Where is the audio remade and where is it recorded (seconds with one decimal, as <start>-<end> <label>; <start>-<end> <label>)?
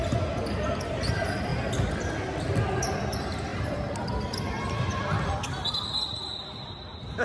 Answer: 0.0-0.8 recorded; 0.8-7.2 remade